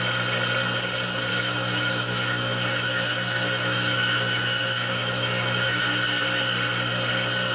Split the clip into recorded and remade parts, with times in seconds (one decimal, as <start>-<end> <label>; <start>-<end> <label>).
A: 0.0-1.3 recorded; 1.3-5.8 remade; 5.8-7.5 recorded